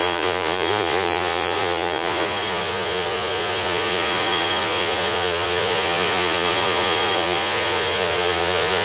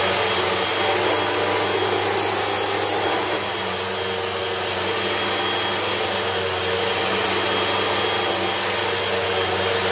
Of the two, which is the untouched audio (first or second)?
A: second